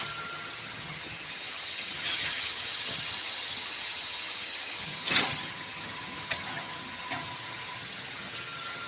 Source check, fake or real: fake